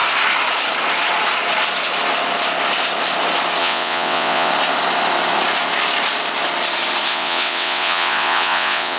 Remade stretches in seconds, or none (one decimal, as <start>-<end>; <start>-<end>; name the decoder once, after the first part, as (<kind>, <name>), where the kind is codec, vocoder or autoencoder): 3.6-4.5 (vocoder, WaveNeXt); 7.1-9.0